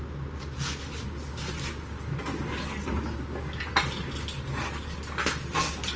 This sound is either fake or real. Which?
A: real